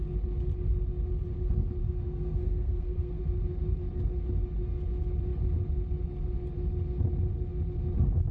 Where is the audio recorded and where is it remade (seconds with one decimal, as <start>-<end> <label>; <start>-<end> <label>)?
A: 0.0-1.8 recorded; 1.8-3.2 remade; 3.2-8.3 recorded